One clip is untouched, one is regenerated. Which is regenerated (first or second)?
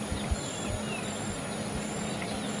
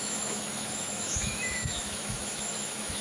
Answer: second